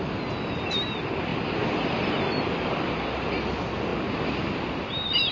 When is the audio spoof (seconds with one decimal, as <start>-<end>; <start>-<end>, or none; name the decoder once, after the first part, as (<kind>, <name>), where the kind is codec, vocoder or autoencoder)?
3.9-5.3 (vocoder, BigVGAN v2)